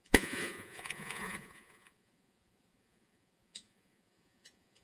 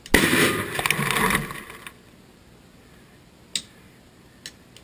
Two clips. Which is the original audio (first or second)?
second